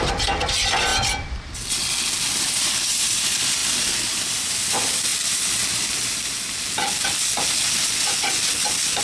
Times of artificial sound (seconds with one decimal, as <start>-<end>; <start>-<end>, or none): none

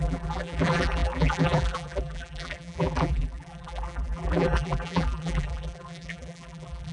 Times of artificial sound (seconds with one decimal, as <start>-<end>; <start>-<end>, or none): 0.0-6.9

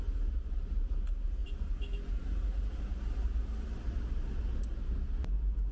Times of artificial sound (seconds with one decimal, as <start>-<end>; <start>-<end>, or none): none

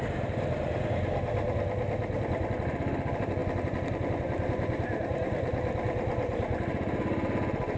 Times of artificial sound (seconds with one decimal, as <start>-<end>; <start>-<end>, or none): none

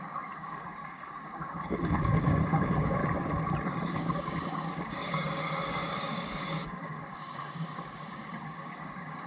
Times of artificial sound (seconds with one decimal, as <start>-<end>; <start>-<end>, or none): 0.0-3.0; 3.7-9.3

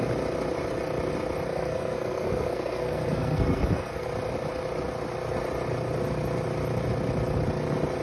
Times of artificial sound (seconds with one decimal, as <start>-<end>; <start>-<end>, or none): 1.5-4.1

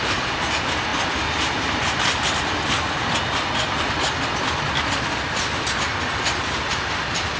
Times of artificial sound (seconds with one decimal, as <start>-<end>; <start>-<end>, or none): none